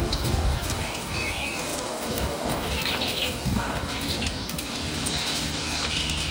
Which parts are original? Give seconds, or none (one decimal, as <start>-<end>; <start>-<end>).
none